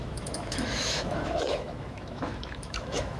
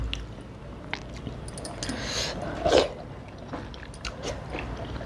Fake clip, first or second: first